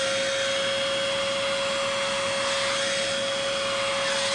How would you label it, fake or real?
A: real